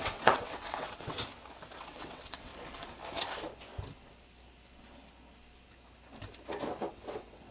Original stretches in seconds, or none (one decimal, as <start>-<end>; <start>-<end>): 1.3-1.8; 2.5-6.9